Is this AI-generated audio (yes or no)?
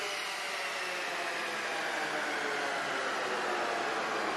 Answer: no